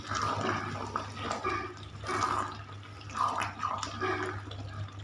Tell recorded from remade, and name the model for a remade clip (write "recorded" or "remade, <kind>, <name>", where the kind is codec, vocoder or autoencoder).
recorded